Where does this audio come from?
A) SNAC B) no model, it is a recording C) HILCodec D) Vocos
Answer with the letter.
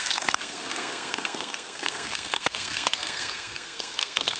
A